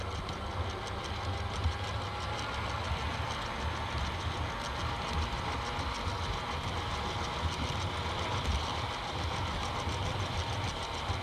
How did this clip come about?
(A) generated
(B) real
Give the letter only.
B